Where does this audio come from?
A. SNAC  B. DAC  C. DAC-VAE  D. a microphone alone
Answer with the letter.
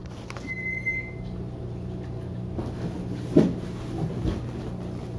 D